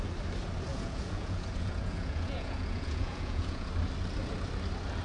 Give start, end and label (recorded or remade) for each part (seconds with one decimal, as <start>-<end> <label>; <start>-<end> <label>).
0.0-0.7 recorded; 0.7-3.7 remade; 3.7-5.0 recorded